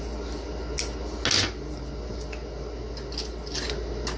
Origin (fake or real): real